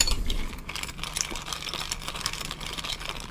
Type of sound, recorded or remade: remade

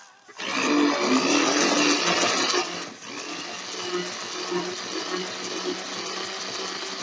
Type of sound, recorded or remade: recorded